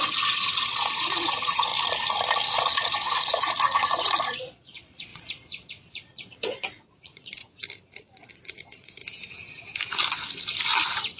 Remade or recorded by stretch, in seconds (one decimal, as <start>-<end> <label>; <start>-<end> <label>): 0.0-1.7 remade; 1.7-2.5 recorded; 2.5-7.4 remade; 7.4-8.0 recorded; 8.0-9.0 remade; 9.0-11.2 recorded

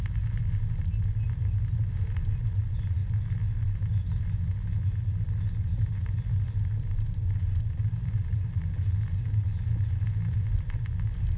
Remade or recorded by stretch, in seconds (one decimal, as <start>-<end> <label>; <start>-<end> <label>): 0.0-11.4 recorded

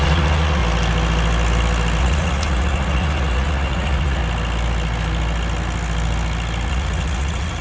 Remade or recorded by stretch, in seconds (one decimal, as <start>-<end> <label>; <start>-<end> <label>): 0.0-0.6 remade; 0.6-2.0 recorded; 2.0-4.2 remade; 4.2-6.7 recorded; 6.7-7.6 remade

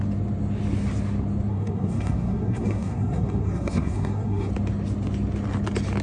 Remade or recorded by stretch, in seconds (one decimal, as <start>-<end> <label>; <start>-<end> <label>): 0.0-1.5 recorded; 1.5-4.5 remade; 4.5-6.0 recorded

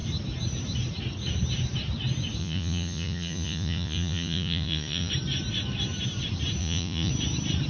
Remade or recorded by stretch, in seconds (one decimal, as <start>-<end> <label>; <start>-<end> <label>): 0.0-2.4 recorded; 2.4-5.1 remade; 5.1-6.6 recorded; 6.6-7.1 remade; 7.1-7.7 recorded

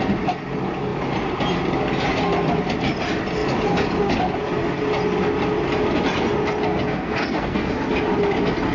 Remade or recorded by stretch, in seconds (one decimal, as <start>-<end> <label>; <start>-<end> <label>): 0.0-6.7 recorded; 6.7-7.7 remade; 7.7-8.7 recorded

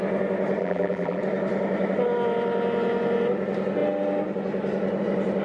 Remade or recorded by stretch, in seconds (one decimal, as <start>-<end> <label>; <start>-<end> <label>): 0.0-0.6 recorded; 0.6-1.2 remade; 1.2-5.4 recorded

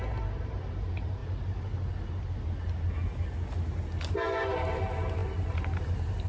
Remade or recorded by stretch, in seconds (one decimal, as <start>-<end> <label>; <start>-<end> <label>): 0.0-1.2 remade; 1.2-4.1 recorded; 4.1-6.3 remade